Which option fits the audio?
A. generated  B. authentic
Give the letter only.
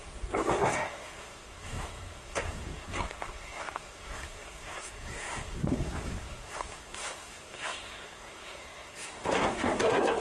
A